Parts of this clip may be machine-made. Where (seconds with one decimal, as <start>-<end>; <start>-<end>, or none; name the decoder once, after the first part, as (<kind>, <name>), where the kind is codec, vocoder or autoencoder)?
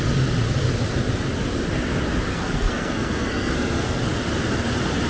2.3-4.0 (codec, SNAC)